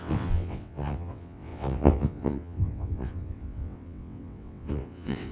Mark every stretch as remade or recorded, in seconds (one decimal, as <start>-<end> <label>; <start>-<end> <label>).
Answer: 0.0-5.3 remade